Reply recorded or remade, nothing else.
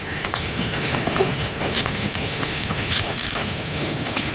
remade